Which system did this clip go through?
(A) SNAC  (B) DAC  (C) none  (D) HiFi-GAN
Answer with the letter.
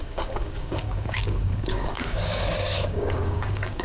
B